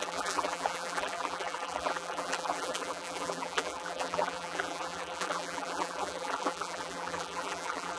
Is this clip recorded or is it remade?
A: remade